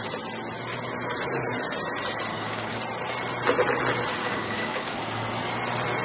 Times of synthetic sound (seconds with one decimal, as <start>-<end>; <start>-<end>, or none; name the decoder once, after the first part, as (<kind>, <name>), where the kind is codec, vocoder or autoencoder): 2.3-2.8 (codec, DAC); 4.2-4.9